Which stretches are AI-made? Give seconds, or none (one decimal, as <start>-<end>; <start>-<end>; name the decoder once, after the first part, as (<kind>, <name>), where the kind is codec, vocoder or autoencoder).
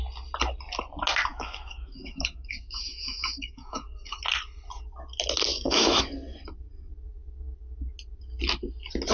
1.3-4.2 (autoencoder, DAC-VAE); 5.5-6.0